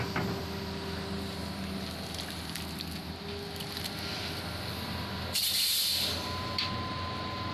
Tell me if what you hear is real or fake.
real